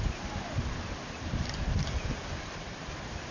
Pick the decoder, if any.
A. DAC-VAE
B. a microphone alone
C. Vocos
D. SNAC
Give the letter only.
B